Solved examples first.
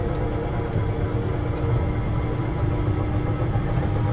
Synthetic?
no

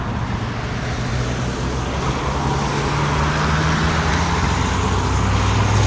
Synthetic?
no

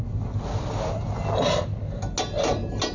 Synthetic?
no